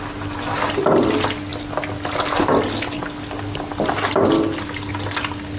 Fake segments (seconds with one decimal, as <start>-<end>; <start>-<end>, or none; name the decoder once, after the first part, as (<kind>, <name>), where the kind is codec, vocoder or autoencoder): none